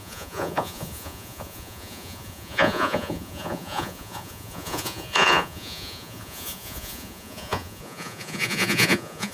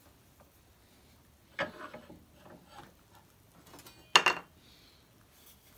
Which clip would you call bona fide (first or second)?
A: second